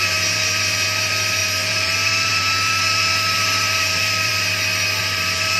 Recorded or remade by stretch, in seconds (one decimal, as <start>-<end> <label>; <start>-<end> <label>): 0.0-4.3 remade; 4.3-5.0 recorded; 5.0-5.6 remade